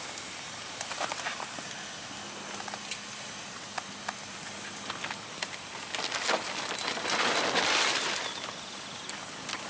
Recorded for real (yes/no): yes